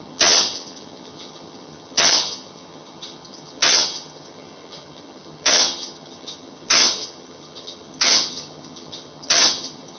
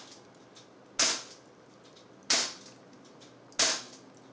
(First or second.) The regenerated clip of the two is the first